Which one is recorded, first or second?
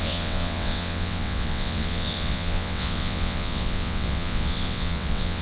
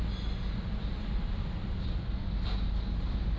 second